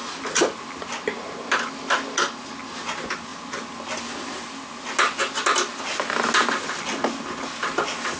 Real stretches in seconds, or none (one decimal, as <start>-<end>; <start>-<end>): 0.0-8.2